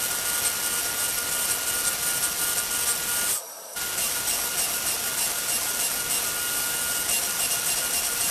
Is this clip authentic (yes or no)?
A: yes